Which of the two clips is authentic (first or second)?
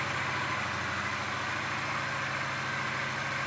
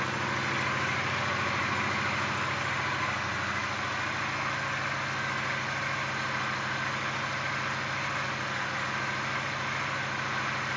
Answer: second